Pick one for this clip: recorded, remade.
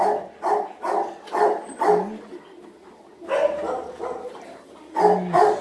recorded